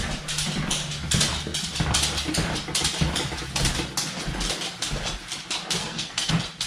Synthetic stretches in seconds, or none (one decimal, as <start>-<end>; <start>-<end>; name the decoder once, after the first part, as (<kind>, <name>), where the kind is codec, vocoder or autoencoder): 5.8-6.3 (codec, SNAC)